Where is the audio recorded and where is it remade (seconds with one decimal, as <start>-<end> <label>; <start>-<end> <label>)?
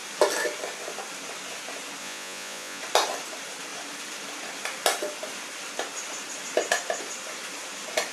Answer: 0.0-2.0 recorded; 2.0-2.8 remade; 2.8-8.1 recorded